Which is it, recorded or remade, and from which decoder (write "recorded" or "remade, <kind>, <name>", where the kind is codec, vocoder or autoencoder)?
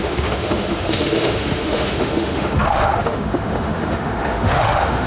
remade, autoencoder, DAC-VAE